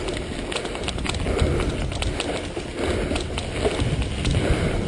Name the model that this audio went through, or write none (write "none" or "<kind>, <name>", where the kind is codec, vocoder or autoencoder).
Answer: none